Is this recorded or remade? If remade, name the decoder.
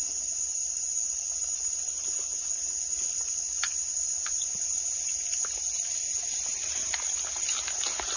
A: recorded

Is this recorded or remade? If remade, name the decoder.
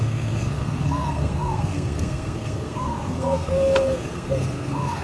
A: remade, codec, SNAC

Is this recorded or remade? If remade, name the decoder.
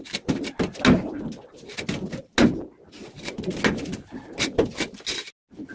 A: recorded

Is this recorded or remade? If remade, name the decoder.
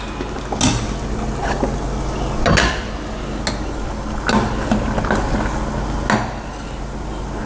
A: recorded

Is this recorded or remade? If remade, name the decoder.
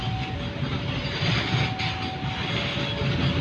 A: recorded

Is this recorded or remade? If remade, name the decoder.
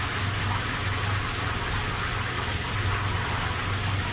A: recorded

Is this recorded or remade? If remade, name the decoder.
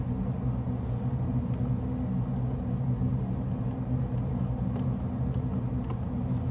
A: recorded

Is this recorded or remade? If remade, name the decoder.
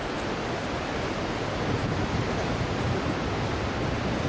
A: recorded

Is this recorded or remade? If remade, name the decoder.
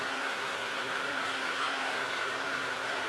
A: remade, codec, SNAC